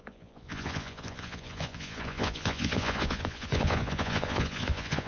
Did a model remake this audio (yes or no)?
yes